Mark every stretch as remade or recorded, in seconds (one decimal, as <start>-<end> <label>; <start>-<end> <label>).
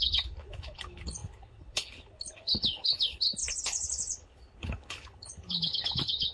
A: 0.0-6.3 remade